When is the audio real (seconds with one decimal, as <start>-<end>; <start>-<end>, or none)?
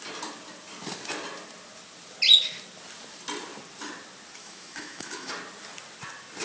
0.0-4.4; 5.3-6.4